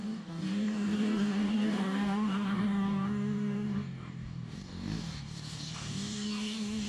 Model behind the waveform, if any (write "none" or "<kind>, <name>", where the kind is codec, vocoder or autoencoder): codec, DAC